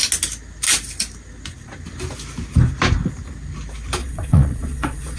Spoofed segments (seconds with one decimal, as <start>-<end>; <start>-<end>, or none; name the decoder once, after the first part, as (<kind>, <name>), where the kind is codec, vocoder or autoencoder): 4.0-5.2 (vocoder, Vocos)

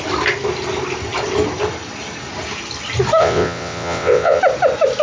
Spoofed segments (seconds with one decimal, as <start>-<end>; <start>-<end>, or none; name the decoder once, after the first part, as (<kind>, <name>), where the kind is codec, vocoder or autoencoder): 3.2-4.4 (vocoder, WaveNeXt)

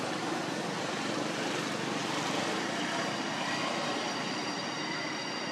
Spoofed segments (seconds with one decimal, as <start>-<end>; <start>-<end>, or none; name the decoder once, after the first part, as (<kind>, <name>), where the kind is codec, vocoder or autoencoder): none

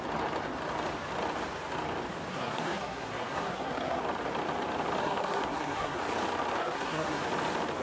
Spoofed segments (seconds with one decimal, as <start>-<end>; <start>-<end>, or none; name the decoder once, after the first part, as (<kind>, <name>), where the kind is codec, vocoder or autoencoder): 2.3-4.0 (codec, SNAC); 5.0-6.0; 6.6-7.2

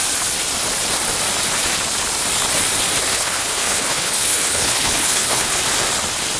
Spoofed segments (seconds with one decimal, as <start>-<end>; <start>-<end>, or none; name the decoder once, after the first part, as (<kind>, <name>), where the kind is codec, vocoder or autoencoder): 3.1-5.6 (codec, HILCodec)

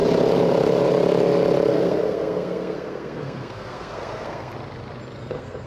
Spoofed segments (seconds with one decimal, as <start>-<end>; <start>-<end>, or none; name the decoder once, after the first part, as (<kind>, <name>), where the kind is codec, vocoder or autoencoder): 1.7-4.5 (codec, SNAC); 5.2-5.7

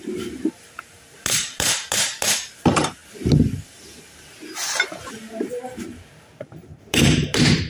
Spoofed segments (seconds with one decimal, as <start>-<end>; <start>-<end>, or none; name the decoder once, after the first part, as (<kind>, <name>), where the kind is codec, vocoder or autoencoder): 0.0-3.0 (vocoder, BigVGAN v2); 5.1-7.7

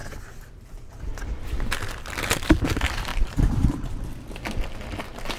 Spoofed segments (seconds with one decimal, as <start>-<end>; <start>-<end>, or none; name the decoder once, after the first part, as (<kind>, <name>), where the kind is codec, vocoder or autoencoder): 3.1-3.8 (vocoder, BigVGAN v2)